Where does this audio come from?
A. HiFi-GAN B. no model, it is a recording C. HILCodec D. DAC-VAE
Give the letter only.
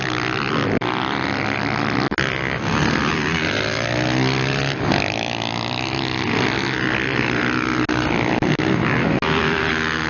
B